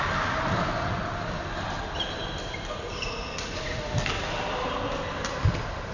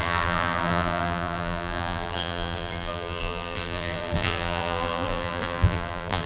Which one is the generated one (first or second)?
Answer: second